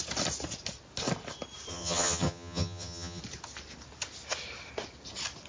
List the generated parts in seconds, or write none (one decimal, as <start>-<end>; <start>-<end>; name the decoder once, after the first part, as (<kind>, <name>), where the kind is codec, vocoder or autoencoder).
1.7-3.2 (vocoder, HiFi-GAN)